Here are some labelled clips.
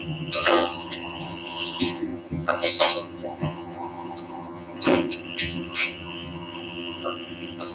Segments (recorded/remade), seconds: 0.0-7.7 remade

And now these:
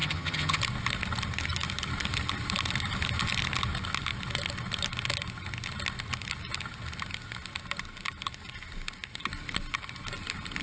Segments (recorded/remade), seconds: 0.0-0.6 remade; 0.6-10.6 recorded